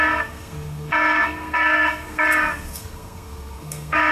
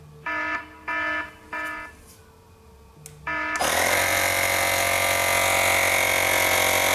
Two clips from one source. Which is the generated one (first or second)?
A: first